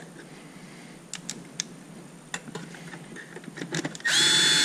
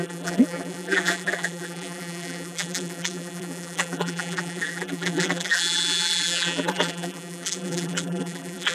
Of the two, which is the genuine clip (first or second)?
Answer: first